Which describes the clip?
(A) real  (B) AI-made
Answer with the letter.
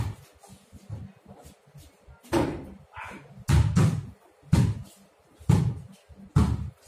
A